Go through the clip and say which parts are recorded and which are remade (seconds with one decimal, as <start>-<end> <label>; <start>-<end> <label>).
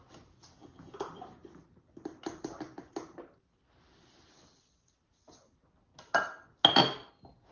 0.0-7.5 recorded